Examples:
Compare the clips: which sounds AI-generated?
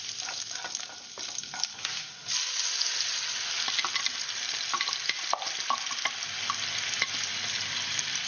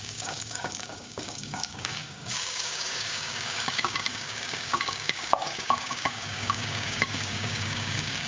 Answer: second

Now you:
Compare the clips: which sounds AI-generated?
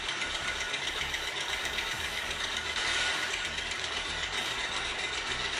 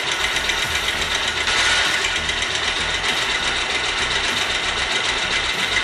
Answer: first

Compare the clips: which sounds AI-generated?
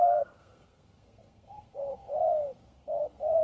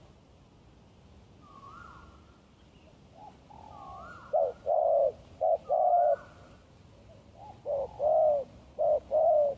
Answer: first